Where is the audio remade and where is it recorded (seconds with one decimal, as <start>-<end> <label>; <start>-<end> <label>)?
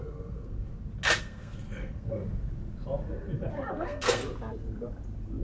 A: 0.0-0.7 remade; 0.7-1.2 recorded; 1.2-2.2 remade; 2.2-3.7 recorded; 3.7-4.2 remade; 4.2-5.4 recorded